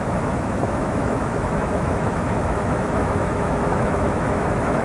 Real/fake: fake